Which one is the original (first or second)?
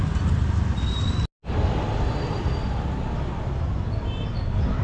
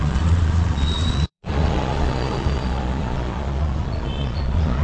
first